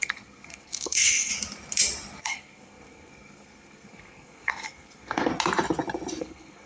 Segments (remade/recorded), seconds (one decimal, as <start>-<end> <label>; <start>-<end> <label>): 0.0-1.3 remade; 1.3-2.2 recorded; 2.2-5.3 remade; 5.3-6.2 recorded; 6.2-6.7 remade